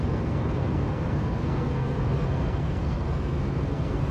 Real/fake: fake